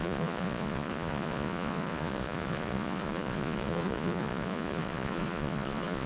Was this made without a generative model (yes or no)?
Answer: no